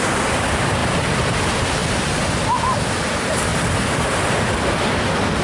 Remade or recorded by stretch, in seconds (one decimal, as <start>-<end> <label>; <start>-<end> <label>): 0.0-0.8 recorded; 0.8-1.4 remade; 1.4-1.8 recorded; 1.8-3.1 remade; 3.1-3.5 recorded; 3.5-4.1 remade; 4.1-5.4 recorded

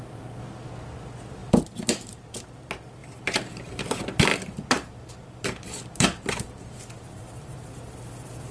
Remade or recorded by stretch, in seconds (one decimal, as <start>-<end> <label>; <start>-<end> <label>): 0.0-1.4 recorded; 1.4-2.3 remade; 2.3-3.0 recorded; 3.0-3.8 remade; 3.8-4.3 recorded; 4.3-7.7 remade; 7.7-8.5 recorded

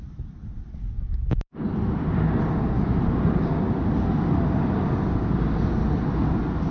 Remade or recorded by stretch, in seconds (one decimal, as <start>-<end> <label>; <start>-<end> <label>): 0.0-6.7 recorded

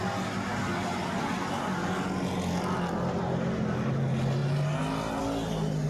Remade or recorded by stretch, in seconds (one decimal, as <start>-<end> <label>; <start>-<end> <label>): 0.0-5.9 recorded

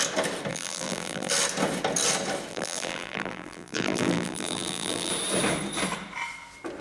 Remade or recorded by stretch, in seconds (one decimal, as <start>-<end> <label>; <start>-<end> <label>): 0.0-0.5 recorded; 0.5-1.3 remade; 1.3-2.5 recorded; 2.5-5.1 remade; 5.1-6.8 recorded

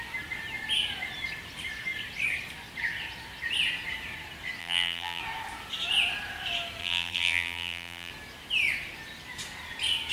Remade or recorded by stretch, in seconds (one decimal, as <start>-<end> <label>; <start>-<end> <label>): 0.0-4.6 recorded; 4.6-5.2 remade; 5.2-6.8 recorded; 6.8-8.1 remade; 8.1-10.1 recorded